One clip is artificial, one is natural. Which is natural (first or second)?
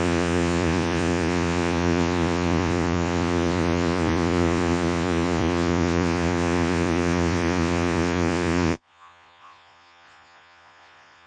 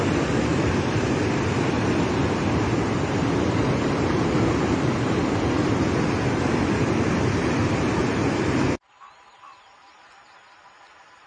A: second